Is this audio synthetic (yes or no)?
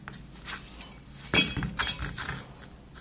no